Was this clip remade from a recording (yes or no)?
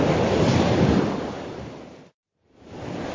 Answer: no